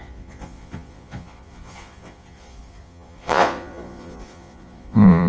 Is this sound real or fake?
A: fake